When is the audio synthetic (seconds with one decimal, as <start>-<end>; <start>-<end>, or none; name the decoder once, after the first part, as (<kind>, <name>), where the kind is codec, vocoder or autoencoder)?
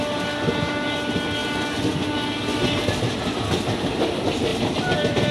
4.5-5.3 (vocoder, BigVGAN v2)